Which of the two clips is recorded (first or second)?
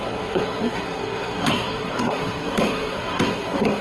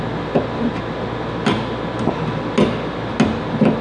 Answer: second